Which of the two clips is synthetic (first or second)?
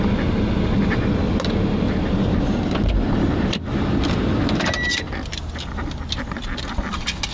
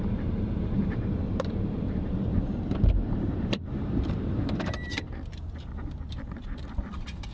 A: second